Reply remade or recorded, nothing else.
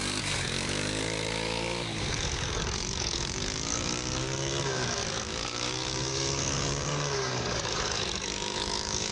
remade